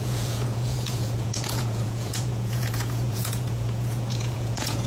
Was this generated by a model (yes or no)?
yes